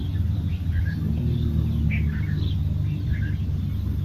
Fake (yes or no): no